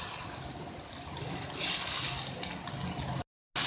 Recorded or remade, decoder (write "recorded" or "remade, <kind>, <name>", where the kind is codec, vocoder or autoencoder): recorded